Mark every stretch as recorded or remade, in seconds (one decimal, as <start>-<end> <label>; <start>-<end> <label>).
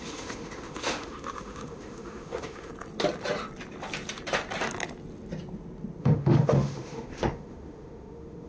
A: 0.0-2.7 remade; 2.7-6.0 recorded; 6.0-8.5 remade